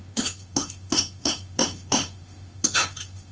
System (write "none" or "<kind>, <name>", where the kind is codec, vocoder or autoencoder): autoencoder, DAC-VAE